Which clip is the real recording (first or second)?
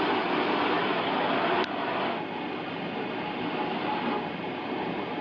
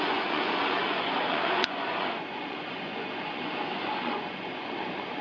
first